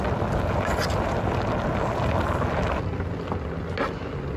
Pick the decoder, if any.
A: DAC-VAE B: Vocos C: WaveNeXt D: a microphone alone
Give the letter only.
D